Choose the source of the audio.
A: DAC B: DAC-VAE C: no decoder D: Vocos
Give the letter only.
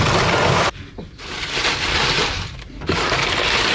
C